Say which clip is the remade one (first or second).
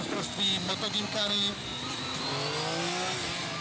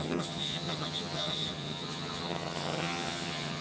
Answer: second